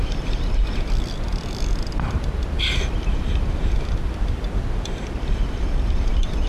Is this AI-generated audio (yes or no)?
yes